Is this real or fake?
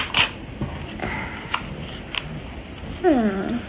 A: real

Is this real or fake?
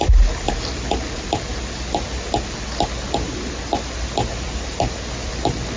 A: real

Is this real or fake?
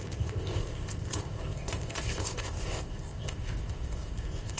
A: fake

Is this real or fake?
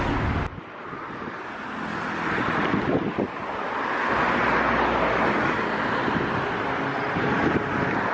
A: real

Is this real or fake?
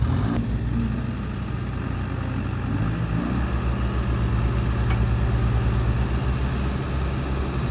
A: real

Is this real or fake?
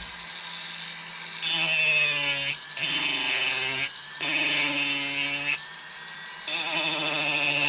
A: real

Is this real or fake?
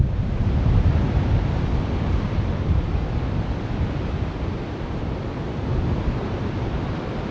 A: real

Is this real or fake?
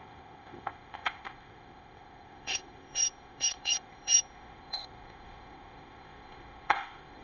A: fake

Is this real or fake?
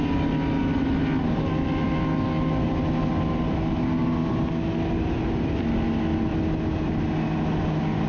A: real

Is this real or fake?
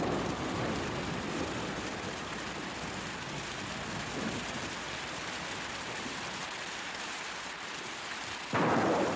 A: real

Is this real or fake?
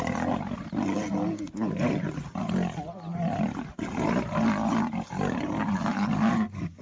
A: real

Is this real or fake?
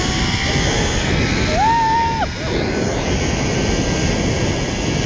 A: real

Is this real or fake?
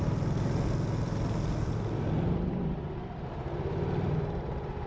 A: real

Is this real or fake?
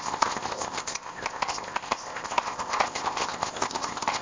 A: fake